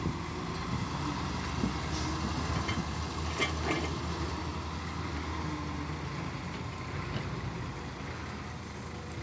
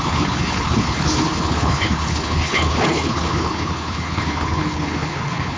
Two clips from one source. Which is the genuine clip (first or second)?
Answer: first